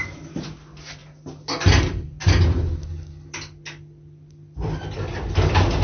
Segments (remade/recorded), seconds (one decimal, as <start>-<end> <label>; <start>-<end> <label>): 0.0-5.8 recorded